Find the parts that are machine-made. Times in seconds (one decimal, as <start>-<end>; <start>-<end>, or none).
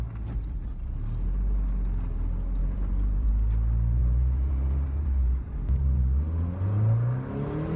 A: 2.6-3.3; 4.0-6.0